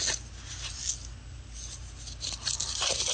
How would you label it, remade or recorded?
recorded